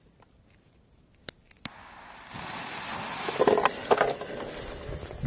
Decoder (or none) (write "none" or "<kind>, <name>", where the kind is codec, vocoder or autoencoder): none